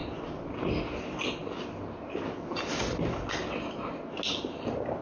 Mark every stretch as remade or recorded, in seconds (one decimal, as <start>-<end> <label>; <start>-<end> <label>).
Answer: 0.0-5.0 recorded